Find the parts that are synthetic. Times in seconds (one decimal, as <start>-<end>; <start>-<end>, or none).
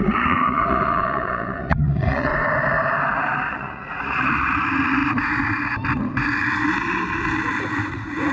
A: 0.0-2.3; 3.5-5.0; 7.6-8.3